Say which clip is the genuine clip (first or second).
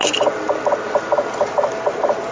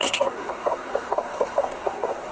first